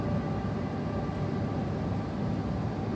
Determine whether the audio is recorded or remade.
recorded